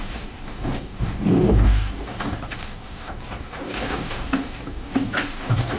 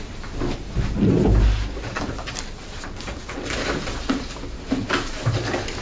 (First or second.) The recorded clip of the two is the second